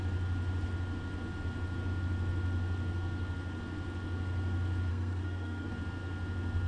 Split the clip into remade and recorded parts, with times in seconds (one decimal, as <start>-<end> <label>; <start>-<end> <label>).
0.0-4.9 recorded; 4.9-5.7 remade; 5.7-6.7 recorded